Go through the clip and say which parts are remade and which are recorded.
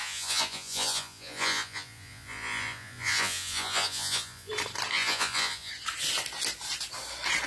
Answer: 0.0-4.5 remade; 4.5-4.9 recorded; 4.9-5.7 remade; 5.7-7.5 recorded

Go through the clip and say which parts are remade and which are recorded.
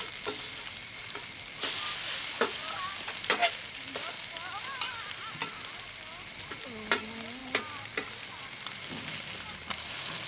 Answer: 0.0-10.3 recorded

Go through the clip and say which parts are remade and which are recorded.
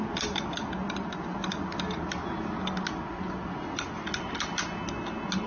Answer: 0.0-5.5 recorded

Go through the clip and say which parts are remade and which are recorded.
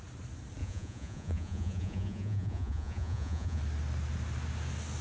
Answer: 0.0-0.6 recorded; 0.6-3.6 remade; 3.6-5.0 recorded